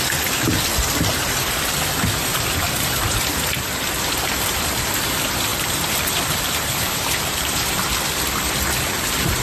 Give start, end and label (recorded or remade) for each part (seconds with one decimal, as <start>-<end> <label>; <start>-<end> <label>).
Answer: 0.0-2.3 recorded; 2.3-3.8 remade; 3.8-5.5 recorded; 5.5-7.7 remade; 7.7-9.4 recorded